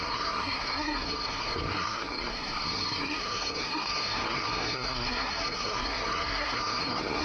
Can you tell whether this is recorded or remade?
remade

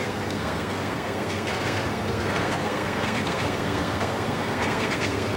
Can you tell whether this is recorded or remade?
remade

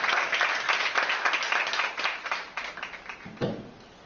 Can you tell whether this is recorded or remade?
recorded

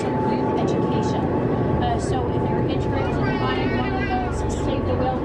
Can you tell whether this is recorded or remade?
recorded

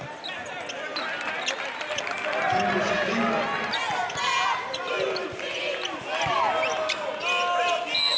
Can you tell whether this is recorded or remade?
recorded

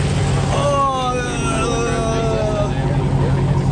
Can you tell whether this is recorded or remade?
recorded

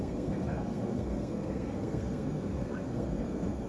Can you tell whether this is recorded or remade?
remade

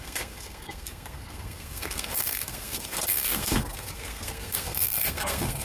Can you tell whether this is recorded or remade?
remade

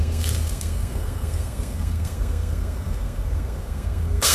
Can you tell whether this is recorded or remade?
remade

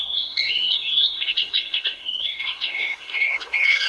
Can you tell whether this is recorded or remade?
remade